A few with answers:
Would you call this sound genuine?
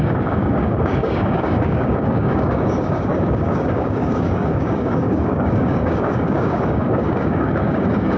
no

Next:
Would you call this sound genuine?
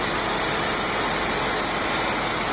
yes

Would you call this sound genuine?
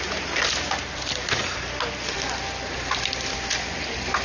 yes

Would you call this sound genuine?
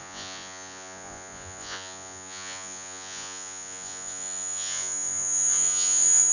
no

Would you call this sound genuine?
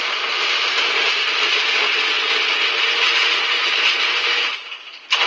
yes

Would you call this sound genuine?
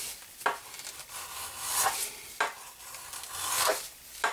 yes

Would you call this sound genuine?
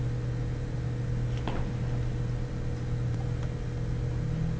yes